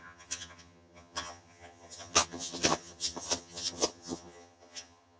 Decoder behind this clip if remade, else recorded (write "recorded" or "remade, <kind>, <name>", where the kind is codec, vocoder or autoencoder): remade, vocoder, HiFi-GAN